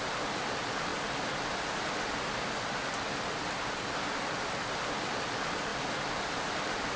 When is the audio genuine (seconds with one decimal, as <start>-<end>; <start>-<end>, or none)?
0.0-5.7